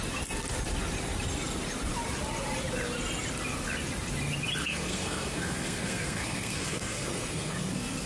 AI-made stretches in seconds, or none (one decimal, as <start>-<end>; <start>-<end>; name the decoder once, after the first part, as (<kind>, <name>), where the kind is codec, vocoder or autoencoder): 4.6-8.1 (codec, SNAC)